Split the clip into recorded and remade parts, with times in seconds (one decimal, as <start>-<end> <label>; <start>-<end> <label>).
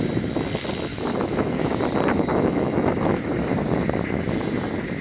0.0-0.9 recorded; 0.9-1.8 remade; 1.8-2.3 recorded; 2.3-3.2 remade; 3.2-5.0 recorded